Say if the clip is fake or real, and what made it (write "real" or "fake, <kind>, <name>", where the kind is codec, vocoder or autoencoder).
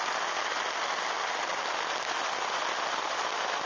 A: real